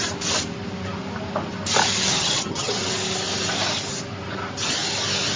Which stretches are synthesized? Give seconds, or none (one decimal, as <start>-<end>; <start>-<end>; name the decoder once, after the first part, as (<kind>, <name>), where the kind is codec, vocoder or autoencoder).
2.2-2.8 (vocoder, HiFi-GAN)